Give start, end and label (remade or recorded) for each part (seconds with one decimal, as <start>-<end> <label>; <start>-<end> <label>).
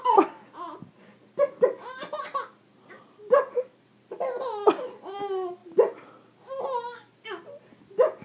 0.0-2.3 recorded; 2.3-4.0 remade; 4.0-8.2 recorded